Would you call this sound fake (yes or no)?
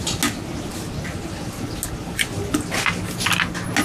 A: no